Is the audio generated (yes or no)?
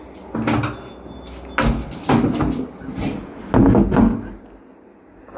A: no